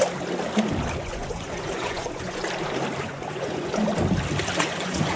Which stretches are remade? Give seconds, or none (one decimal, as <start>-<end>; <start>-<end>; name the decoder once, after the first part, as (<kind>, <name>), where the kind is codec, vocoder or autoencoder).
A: 1.0-2.4 (vocoder, Vocos); 3.0-3.7; 4.6-5.2